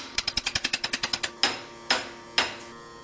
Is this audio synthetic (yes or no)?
no